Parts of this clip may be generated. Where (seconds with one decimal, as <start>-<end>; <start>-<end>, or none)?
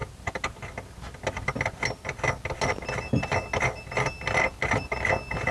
none